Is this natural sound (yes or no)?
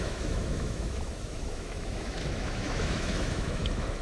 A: no